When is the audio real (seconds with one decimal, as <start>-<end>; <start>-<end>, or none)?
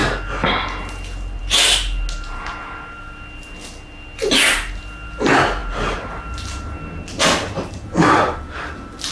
0.0-9.1